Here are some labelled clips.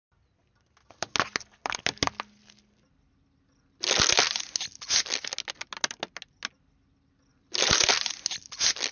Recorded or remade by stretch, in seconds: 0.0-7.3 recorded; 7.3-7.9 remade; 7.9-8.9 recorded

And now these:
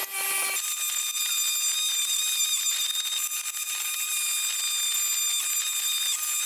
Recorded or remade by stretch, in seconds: 0.0-2.0 recorded; 2.0-2.9 remade; 2.9-3.6 recorded; 3.6-4.2 remade; 4.2-6.5 recorded

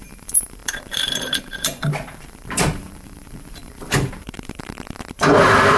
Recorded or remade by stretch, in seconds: 0.0-5.8 remade

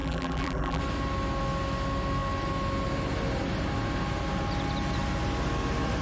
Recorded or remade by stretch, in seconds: 0.0-0.8 remade; 0.8-6.0 recorded

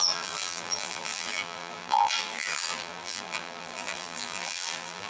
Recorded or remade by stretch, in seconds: 0.0-5.1 remade

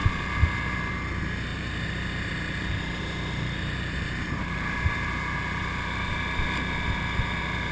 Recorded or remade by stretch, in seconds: 0.0-1.5 recorded; 1.5-6.1 remade; 6.1-7.7 recorded